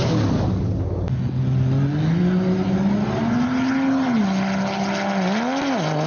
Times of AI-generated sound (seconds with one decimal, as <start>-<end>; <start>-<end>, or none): none